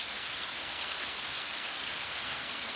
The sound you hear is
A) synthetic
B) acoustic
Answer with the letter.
A